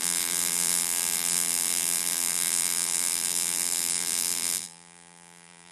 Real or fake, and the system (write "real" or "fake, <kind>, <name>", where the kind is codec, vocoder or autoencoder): fake, vocoder, BigVGAN v2